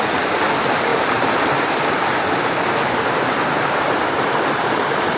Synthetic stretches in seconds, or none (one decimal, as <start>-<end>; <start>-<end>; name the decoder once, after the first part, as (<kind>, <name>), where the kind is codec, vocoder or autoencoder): 0.9-4.0 (vocoder, BigVGAN v2)

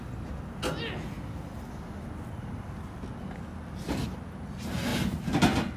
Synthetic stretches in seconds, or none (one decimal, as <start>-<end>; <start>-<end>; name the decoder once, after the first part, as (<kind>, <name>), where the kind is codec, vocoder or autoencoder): none

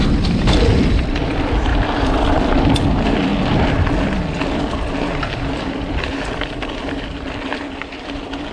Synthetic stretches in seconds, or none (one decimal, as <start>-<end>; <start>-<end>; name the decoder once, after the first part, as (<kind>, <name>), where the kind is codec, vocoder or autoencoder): 0.0-1.7 (vocoder, BigVGAN v2); 2.9-3.3; 5.2-8.5

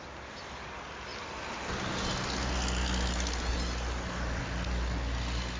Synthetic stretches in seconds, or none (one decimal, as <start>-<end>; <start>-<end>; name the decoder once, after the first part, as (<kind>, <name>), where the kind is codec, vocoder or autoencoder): 1.1-1.7 (vocoder, BigVGAN v2)

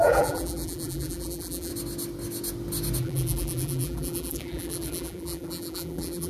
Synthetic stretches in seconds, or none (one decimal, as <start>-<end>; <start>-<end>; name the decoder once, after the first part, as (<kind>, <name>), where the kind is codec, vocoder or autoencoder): 0.0-1.7 (vocoder, BigVGAN v2); 3.0-6.3

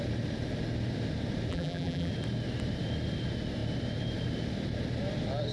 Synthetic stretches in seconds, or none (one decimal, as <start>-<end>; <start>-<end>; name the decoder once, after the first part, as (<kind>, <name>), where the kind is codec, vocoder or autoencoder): 1.5-2.1 (vocoder, BigVGAN v2)